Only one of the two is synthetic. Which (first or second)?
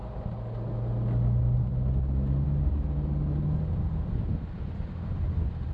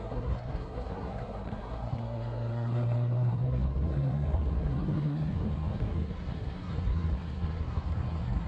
second